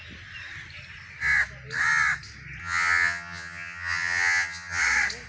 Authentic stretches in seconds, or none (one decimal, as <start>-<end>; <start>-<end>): 0.0-2.6; 4.8-5.3